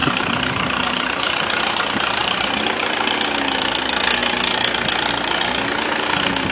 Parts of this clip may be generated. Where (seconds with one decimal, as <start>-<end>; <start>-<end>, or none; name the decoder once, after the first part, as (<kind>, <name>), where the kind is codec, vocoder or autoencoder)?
0.0-1.8 (vocoder, BigVGAN v2); 2.2-2.8